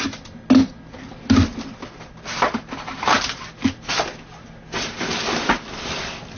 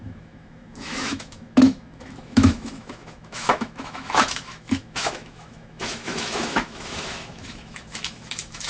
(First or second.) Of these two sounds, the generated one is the second